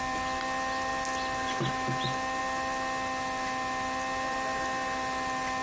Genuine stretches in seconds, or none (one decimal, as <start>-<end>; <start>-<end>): 0.0-5.6